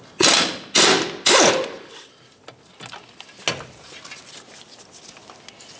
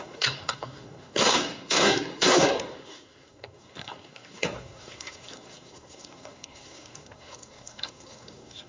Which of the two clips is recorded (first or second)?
first